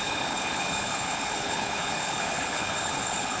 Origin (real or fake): fake